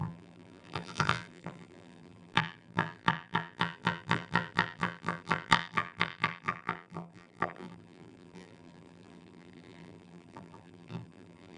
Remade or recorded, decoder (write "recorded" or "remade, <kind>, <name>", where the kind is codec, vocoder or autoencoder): remade, vocoder, BigVGAN v2